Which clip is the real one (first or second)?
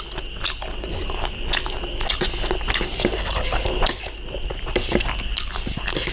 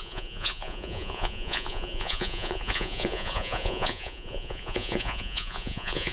first